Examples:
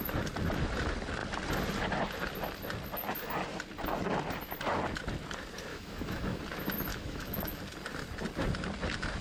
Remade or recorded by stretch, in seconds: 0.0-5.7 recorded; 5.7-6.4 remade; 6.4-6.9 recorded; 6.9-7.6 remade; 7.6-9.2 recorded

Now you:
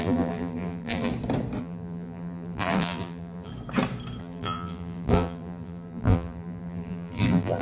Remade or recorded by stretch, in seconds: 0.0-1.1 remade; 1.1-1.6 recorded; 1.6-3.5 remade; 3.5-4.2 recorded; 4.2-7.6 remade

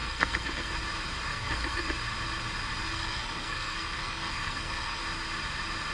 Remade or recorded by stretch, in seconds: 0.0-0.7 remade; 0.7-1.3 recorded; 1.3-2.0 remade; 2.0-2.8 recorded; 2.8-5.0 remade; 5.0-5.9 recorded

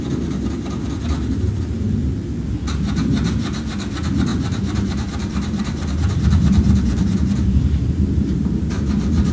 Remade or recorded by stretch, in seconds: 0.0-4.3 recorded; 4.3-9.3 remade

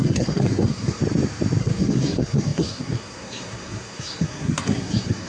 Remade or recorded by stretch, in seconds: 0.0-1.0 remade; 1.0-1.6 recorded; 1.6-5.3 remade

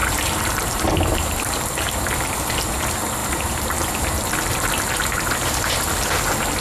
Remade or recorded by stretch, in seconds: 0.0-2.0 remade; 2.0-3.2 recorded; 3.2-4.7 remade; 4.7-6.6 recorded

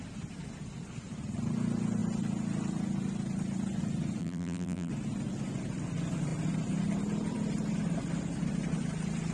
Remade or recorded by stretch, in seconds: 0.0-4.2 recorded; 4.2-4.9 remade; 4.9-9.3 recorded

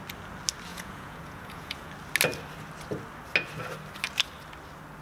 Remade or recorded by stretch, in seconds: 0.0-0.7 recorded; 0.7-1.9 remade; 1.9-5.0 recorded